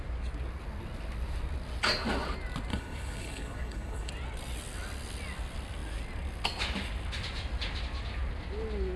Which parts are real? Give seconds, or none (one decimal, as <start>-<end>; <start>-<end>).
0.0-2.7; 4.1-9.0